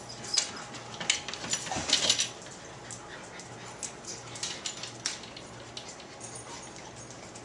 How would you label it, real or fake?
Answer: real